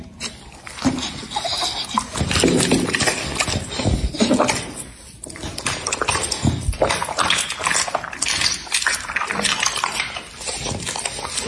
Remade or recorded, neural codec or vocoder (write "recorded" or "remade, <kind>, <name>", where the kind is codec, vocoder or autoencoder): recorded